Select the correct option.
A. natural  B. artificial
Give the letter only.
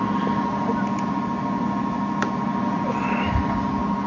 A